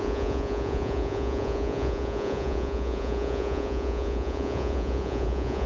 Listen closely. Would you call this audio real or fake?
fake